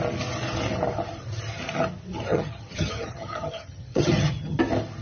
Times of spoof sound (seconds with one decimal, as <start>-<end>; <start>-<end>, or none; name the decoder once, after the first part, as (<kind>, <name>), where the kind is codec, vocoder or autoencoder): 2.3-4.6 (vocoder, HiFi-GAN)